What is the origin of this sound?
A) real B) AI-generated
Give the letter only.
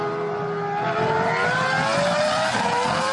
A